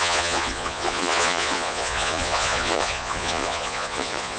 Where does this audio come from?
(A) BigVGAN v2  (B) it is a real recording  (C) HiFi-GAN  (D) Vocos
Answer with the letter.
D